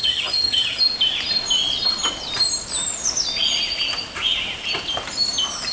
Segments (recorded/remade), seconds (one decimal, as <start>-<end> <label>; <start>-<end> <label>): 0.0-0.8 remade; 0.8-5.7 recorded